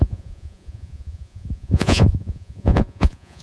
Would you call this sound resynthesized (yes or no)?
yes